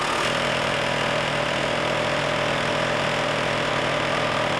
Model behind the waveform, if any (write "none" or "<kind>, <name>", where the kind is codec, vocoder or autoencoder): none